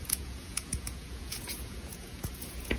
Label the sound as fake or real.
fake